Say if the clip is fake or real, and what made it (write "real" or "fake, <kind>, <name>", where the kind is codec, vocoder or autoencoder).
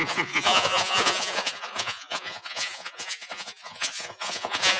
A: fake, vocoder, Vocos